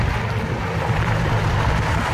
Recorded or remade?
remade